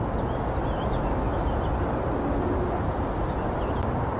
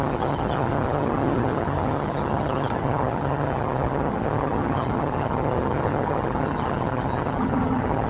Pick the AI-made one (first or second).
second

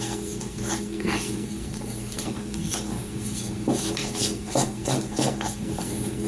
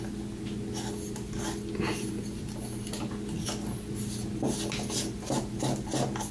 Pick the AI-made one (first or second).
first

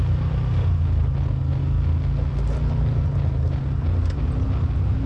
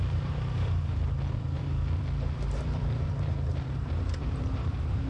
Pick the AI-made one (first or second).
second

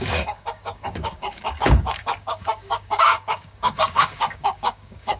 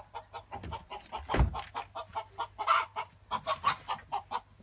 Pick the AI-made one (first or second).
first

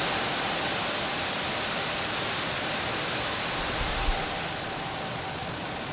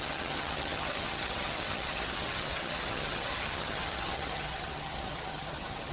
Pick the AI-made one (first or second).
second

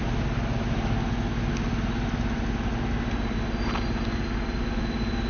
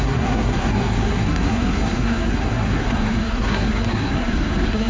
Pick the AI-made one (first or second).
second